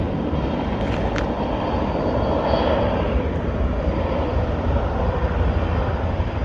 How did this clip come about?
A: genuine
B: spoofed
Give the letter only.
B